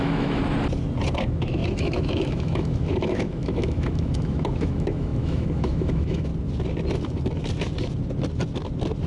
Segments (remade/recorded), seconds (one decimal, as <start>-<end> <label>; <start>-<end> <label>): 0.0-0.4 remade; 0.4-1.2 recorded; 1.2-6.3 remade; 6.3-9.1 recorded